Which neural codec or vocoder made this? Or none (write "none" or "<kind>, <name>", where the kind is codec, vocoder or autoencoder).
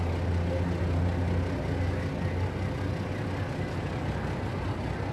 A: none